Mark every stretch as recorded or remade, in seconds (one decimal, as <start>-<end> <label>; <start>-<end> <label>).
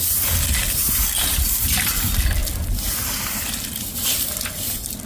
0.0-0.8 recorded; 0.8-2.0 remade; 2.0-5.1 recorded